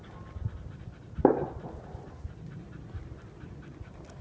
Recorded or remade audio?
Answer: recorded